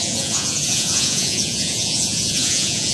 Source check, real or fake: fake